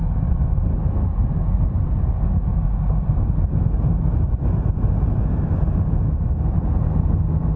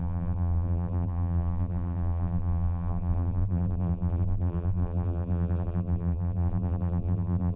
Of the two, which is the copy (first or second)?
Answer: second